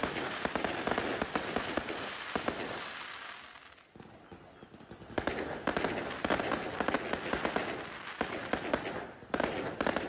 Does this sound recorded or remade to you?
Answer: recorded